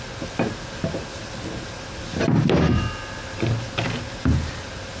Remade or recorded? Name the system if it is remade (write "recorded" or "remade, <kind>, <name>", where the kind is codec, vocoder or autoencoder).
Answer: recorded